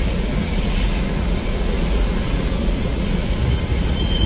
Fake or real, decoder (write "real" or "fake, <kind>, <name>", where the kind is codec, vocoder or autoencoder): fake, vocoder, Vocos